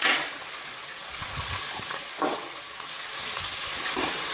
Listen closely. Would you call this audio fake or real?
fake